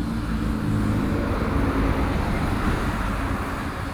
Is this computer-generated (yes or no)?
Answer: no